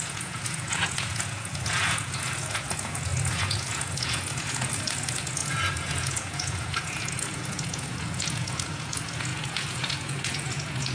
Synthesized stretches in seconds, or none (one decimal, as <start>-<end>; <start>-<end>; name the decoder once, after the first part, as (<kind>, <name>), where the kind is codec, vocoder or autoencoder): 0.0-10.9 (vocoder, Vocos)